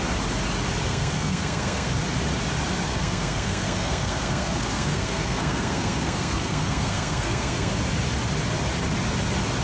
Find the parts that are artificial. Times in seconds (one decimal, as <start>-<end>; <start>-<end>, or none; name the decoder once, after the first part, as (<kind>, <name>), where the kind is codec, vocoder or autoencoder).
0.9-1.9 (codec, SNAC); 2.9-7.7